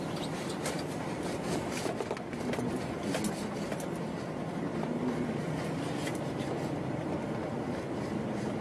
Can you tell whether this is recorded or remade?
remade